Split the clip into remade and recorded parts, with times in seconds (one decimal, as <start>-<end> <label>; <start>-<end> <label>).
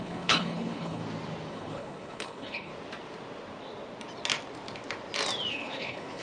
0.0-1.0 remade; 1.0-1.5 recorded; 1.5-2.7 remade; 2.7-5.5 recorded; 5.5-6.2 remade